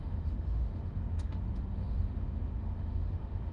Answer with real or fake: fake